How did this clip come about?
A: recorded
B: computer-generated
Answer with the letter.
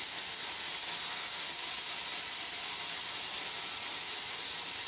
A